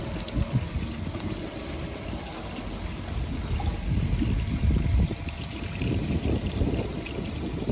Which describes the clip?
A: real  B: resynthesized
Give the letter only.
A